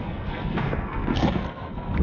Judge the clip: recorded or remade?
remade